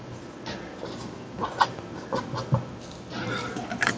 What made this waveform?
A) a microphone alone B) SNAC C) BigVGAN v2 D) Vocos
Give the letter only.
A